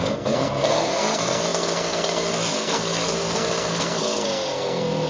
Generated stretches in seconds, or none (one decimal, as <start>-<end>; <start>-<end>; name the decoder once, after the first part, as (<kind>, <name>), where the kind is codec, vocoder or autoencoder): 0.0-5.1 (codec, SNAC)